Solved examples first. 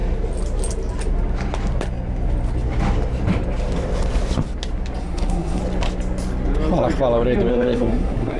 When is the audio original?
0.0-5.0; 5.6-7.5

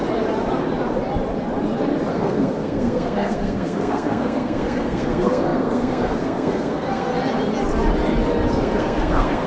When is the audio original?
0.0-2.1; 7.1-8.5

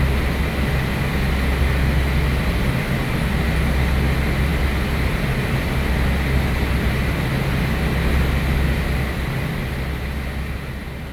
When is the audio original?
0.0-11.1

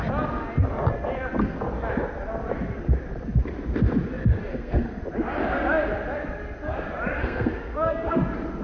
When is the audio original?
0.0-4.5; 5.0-7.2; 8.2-8.6

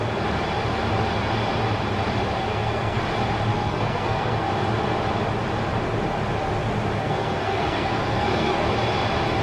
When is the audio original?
0.0-2.4; 3.0-3.5; 4.5-7.0; 8.7-9.4

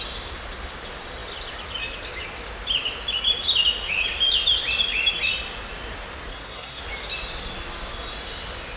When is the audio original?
0.0-6.3; 6.8-8.8